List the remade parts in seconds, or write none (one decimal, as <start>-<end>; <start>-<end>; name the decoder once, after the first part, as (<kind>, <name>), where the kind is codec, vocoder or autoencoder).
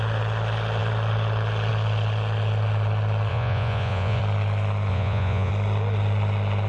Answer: 3.3-4.2 (vocoder, Vocos); 4.9-5.5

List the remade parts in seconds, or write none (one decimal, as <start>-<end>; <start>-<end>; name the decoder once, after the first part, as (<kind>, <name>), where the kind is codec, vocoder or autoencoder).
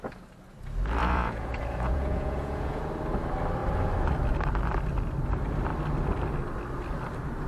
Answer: 1.0-2.8 (vocoder, Vocos)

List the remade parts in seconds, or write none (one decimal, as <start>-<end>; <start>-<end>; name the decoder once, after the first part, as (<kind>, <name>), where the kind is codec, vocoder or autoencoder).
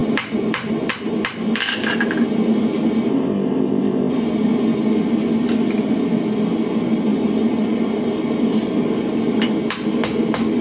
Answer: 3.1-4.1 (codec, ZipCodec)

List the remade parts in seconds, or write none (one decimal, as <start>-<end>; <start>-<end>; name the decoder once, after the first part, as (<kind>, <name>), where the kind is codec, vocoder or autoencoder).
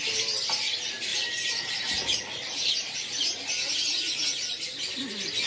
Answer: 1.1-3.2 (vocoder, BigVGAN v2)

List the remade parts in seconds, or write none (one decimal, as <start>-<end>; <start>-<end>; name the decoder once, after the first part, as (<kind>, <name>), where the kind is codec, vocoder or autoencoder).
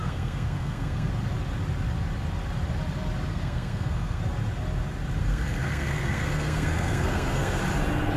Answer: 0.0-1.1 (codec, SNAC); 3.3-4.2; 5.2-7.6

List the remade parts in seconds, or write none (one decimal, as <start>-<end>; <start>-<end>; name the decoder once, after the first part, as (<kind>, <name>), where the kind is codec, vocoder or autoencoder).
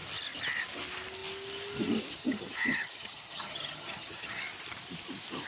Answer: 2.2-4.4 (vocoder, HiFi-GAN)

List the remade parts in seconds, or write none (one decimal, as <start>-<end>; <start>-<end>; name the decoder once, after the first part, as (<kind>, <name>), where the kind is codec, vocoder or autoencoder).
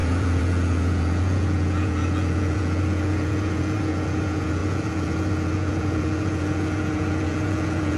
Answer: 0.0-8.0 (vocoder, Vocos)